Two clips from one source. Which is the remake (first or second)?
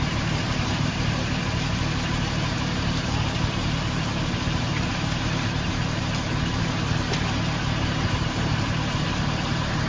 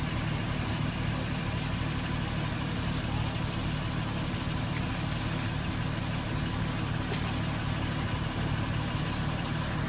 first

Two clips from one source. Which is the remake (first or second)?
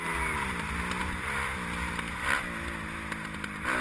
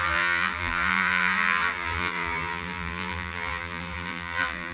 second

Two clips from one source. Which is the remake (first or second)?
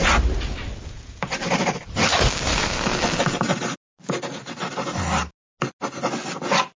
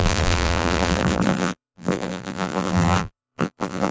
second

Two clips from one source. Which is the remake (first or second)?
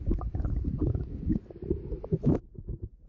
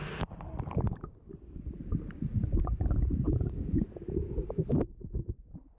second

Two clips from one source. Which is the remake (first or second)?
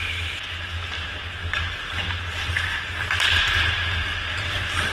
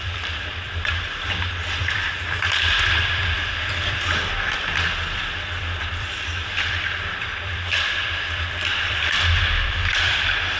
second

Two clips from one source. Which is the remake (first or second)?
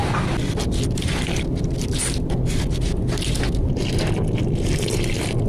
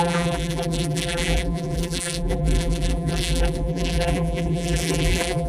second